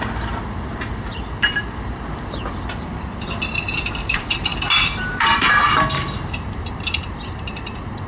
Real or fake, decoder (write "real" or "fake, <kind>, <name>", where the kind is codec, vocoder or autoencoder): fake, vocoder, BigVGAN v2